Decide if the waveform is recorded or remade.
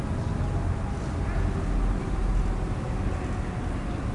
recorded